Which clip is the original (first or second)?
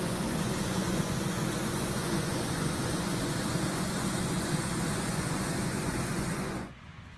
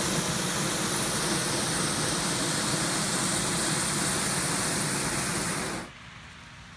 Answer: second